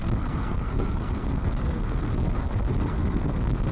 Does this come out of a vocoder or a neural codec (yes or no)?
yes